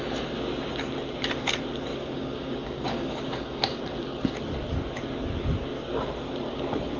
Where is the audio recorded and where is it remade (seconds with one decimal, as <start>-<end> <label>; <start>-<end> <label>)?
0.0-1.9 recorded; 1.9-3.8 remade; 3.8-7.0 recorded